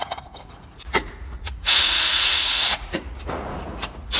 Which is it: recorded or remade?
remade